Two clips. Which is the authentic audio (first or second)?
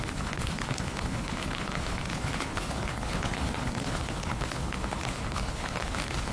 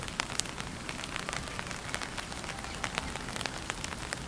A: second